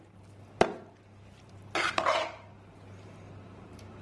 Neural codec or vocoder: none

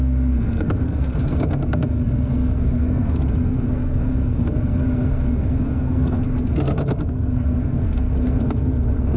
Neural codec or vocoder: codec, SNAC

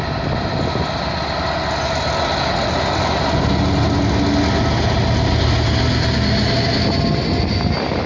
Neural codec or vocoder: none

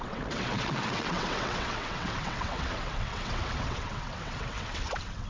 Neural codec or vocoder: vocoder, WaveNeXt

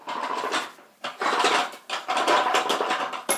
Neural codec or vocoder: none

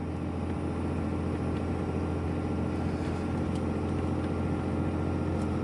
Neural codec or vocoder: none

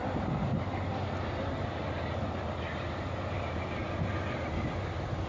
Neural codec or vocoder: none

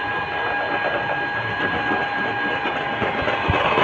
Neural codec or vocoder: none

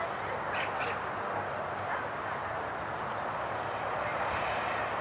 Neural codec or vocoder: none